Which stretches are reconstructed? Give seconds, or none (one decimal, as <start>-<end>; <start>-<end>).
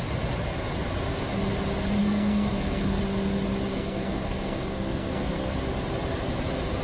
2.0-3.0; 3.7-5.6